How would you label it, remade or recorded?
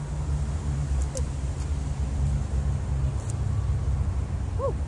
recorded